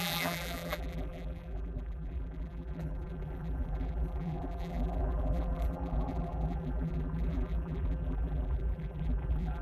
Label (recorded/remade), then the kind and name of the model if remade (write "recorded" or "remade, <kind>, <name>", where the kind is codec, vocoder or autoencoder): remade, vocoder, BigVGAN v2